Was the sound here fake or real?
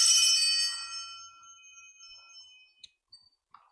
real